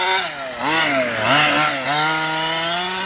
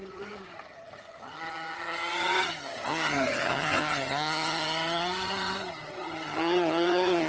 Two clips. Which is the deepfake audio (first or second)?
second